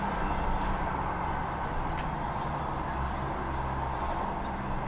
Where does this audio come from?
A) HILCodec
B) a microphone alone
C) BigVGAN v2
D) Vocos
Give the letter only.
B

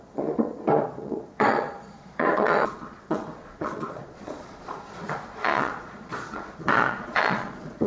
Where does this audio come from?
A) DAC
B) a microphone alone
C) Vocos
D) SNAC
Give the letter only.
C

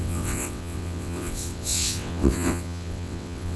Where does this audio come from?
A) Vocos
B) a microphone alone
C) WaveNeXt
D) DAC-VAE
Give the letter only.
C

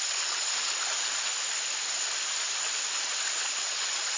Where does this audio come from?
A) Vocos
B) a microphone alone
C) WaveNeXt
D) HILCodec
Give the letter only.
B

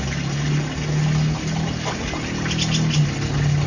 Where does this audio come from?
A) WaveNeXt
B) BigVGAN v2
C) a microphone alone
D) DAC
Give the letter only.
C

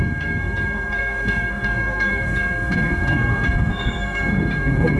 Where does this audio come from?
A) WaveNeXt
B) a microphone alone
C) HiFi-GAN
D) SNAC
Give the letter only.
D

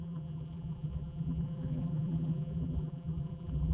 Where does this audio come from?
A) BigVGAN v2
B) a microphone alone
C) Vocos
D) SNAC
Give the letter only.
A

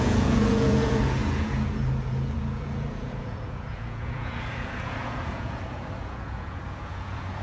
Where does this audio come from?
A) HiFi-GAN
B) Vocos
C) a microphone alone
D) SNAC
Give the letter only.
B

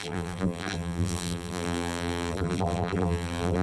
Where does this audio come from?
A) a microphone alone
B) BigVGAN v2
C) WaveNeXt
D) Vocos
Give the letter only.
B